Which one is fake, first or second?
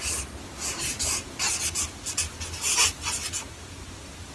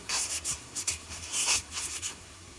second